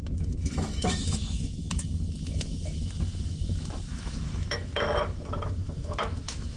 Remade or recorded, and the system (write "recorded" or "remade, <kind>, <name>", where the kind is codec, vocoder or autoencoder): remade, autoencoder, DAC-VAE